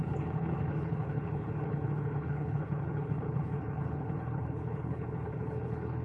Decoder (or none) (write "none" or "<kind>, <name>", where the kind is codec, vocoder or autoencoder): codec, HILCodec